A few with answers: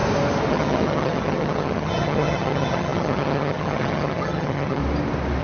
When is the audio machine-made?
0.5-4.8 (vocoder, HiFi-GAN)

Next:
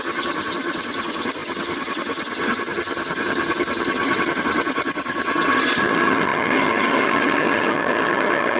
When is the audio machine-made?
0.0-8.6 (vocoder, HiFi-GAN)

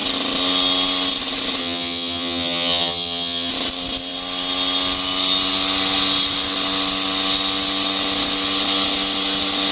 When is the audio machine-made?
1.6-3.5 (vocoder, HiFi-GAN)

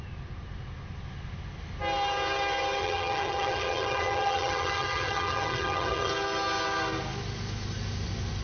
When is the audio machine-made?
2.8-6.1 (vocoder, HiFi-GAN)

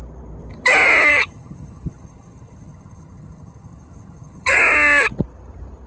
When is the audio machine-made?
1.1-4.6 (vocoder, HiFi-GAN)

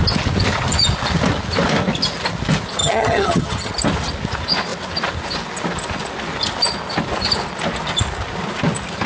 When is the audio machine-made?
2.8-3.7 (vocoder, HiFi-GAN)

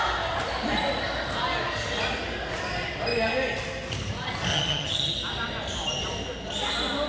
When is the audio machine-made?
4.5-5.1 (vocoder, HiFi-GAN)